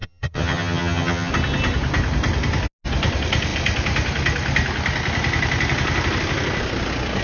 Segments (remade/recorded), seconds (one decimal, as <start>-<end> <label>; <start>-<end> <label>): 0.0-1.3 remade; 1.3-7.2 recorded